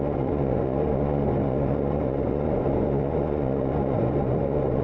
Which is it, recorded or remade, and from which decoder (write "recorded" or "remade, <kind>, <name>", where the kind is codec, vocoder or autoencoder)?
remade, vocoder, Vocos